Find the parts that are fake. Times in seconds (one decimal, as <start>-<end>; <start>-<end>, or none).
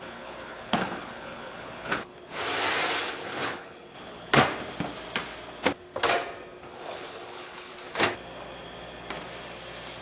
0.0-2.1; 3.0-4.4; 6.7-7.7